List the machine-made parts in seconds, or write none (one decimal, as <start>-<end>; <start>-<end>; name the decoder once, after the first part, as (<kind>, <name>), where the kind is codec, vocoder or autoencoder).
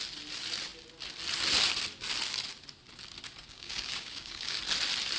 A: 3.4-4.6 (codec, DAC)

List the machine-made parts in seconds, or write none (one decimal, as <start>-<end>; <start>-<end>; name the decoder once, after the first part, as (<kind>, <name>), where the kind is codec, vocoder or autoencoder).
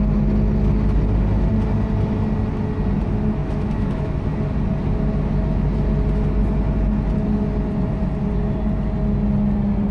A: 3.4-4.1 (autoencoder, DAC-VAE)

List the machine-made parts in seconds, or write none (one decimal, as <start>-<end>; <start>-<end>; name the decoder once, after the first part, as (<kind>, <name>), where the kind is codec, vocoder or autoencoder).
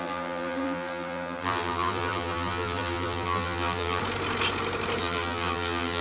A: 0.0-4.0 (vocoder, BigVGAN v2); 5.0-6.0